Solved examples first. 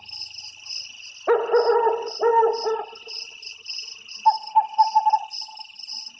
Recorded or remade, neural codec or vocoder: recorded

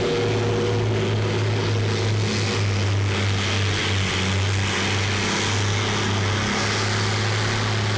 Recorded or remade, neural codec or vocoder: recorded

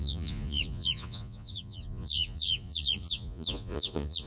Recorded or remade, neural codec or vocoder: remade, vocoder, Vocos